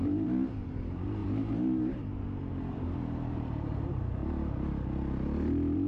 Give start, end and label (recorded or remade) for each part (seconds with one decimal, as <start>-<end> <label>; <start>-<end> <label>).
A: 0.0-4.2 remade; 4.2-5.9 recorded